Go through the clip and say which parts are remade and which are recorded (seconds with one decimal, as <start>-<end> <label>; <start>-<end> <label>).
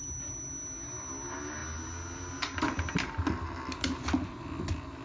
0.0-5.0 recorded